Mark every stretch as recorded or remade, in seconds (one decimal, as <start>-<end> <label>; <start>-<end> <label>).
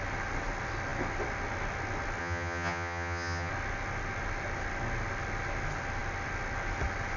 0.0-2.2 recorded; 2.2-3.5 remade; 3.5-7.2 recorded